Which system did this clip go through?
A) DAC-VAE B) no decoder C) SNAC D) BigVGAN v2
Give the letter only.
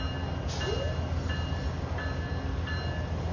B